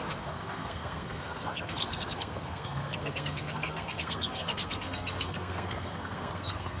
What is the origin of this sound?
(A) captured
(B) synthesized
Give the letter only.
B